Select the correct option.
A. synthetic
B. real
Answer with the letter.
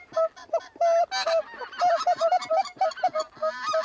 B